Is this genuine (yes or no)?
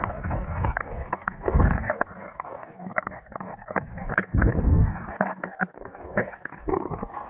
no